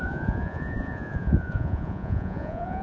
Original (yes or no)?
no